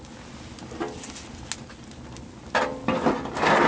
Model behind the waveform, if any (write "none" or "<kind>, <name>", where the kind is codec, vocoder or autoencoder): none